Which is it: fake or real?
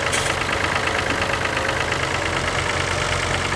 real